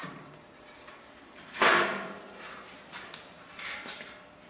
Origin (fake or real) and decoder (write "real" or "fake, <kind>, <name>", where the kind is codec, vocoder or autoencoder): fake, vocoder, BigVGAN v2